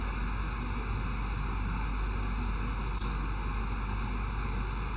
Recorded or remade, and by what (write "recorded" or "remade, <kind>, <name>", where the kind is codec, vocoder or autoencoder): recorded